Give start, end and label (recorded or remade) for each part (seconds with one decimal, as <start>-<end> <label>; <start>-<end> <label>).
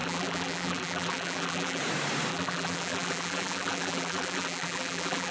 0.0-1.8 remade; 1.8-2.3 recorded; 2.3-5.3 remade